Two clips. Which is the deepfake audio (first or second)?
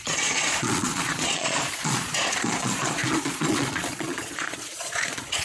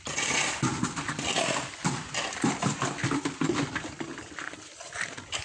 first